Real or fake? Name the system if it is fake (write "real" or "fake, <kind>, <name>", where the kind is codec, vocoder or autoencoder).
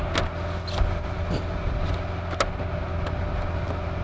real